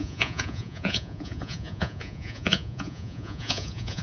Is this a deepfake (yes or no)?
yes